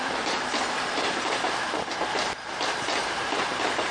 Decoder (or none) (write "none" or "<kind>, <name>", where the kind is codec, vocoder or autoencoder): vocoder, BigVGAN v2